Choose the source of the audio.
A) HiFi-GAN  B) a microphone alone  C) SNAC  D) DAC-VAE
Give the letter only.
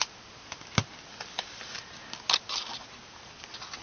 B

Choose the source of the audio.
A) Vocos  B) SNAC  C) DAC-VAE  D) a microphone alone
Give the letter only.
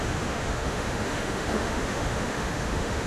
C